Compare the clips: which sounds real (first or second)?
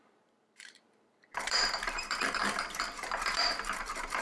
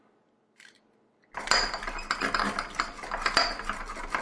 second